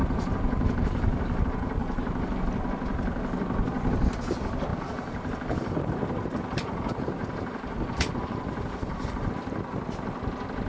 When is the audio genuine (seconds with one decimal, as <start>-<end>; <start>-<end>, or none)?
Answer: 1.4-1.8; 2.4-4.7; 9.3-10.7